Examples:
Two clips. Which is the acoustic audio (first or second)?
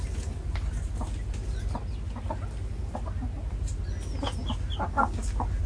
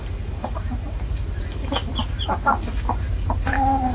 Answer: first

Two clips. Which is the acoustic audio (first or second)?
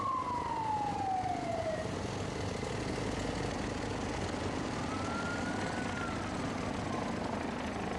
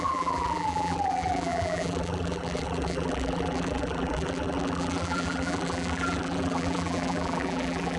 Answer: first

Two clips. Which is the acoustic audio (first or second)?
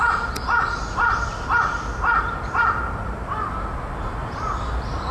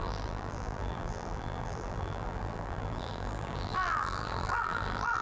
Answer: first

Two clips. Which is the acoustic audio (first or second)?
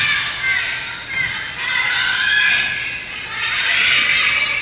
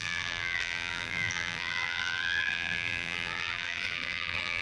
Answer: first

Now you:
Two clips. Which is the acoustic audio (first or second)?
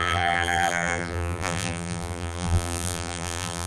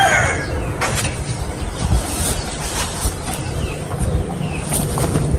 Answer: second